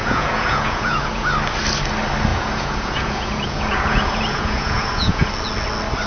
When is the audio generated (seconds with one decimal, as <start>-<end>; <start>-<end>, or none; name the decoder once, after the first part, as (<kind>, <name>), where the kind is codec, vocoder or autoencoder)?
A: 0.0-1.3 (vocoder, Vocos); 2.3-5.3